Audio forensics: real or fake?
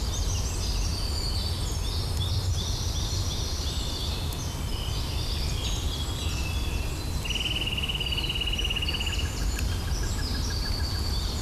real